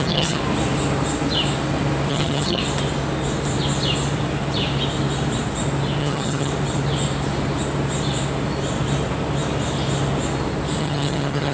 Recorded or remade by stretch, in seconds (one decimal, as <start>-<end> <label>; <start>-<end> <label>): 0.0-0.4 remade; 0.4-2.1 recorded; 2.1-2.6 remade; 2.6-6.0 recorded; 6.0-6.5 remade; 6.5-10.8 recorded; 10.8-11.5 remade